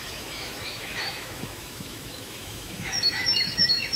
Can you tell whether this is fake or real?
fake